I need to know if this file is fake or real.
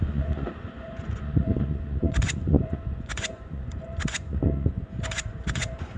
fake